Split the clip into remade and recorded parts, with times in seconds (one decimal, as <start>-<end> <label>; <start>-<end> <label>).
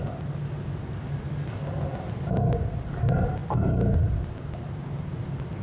0.0-5.6 recorded